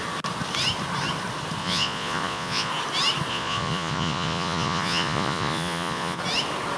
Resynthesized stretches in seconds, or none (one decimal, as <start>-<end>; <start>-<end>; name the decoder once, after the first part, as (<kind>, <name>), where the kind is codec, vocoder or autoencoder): 1.6-2.7 (vocoder, Vocos); 3.3-6.2